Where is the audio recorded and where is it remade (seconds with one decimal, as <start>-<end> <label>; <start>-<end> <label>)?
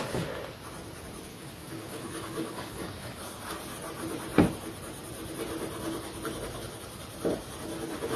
0.0-1.3 recorded; 1.3-3.2 remade; 3.2-8.2 recorded